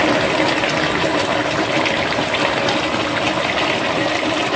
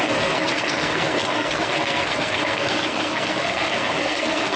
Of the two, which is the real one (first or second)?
first